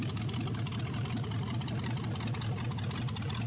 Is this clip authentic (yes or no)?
yes